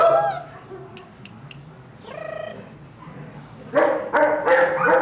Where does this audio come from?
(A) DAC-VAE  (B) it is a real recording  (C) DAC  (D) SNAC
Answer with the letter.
B